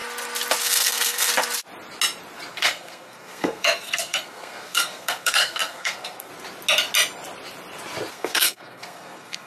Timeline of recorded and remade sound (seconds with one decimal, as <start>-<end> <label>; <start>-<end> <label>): 0.0-0.6 recorded; 0.6-1.3 remade; 1.3-2.5 recorded; 2.5-6.3 remade; 6.3-8.1 recorded; 8.1-9.5 remade